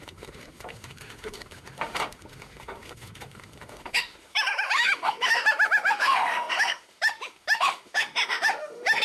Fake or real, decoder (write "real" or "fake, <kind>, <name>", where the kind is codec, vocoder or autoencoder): fake, autoencoder, DAC-VAE